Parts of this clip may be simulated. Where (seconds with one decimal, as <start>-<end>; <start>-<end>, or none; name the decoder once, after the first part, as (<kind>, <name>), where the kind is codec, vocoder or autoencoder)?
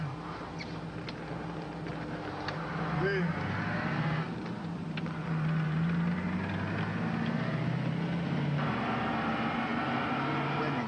none